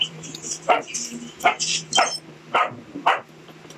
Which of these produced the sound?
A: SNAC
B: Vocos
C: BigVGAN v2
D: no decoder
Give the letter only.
C